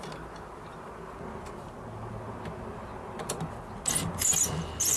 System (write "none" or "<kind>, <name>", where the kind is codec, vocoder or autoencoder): none